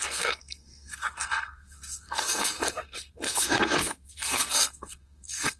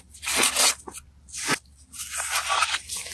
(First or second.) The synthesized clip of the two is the first